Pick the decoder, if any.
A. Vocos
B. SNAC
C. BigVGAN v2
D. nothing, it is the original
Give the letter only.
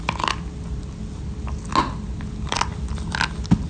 D